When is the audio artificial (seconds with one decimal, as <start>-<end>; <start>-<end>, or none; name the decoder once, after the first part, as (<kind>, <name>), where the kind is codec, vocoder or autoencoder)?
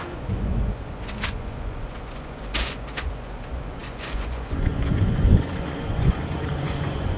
0.0-7.2 (vocoder, Vocos)